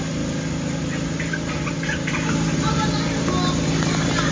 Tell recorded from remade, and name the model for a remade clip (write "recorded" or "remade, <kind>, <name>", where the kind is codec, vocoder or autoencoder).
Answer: recorded